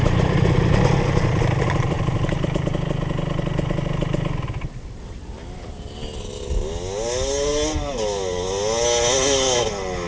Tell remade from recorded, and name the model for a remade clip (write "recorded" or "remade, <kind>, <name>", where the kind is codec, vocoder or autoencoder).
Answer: recorded